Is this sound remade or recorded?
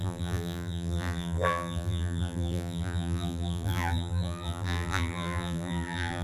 remade